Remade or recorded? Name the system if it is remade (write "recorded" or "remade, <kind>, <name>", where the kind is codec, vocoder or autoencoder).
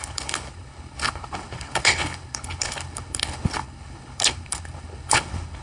remade, codec, HILCodec